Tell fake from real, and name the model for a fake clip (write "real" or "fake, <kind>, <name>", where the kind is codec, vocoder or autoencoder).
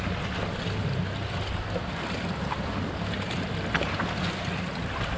real